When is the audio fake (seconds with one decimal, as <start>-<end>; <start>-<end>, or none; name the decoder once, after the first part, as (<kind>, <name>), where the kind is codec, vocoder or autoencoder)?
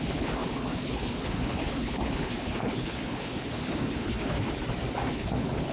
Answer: 0.0-4.6 (codec, HILCodec); 5.1-5.7